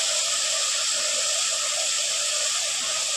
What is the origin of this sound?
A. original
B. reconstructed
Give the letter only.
A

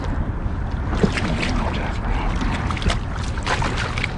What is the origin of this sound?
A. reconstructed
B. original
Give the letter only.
B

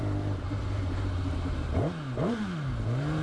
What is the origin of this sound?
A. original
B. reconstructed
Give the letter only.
B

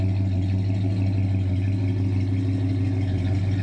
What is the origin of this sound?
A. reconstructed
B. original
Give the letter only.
B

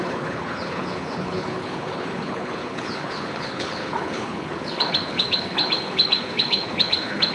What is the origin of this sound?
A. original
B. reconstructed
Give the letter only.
B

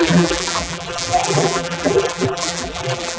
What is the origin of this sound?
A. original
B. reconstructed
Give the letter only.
B